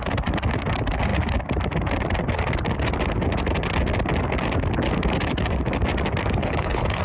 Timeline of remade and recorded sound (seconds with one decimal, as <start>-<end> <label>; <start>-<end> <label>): 0.0-6.4 recorded; 6.4-7.0 remade